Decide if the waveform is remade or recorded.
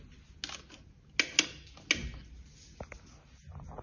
recorded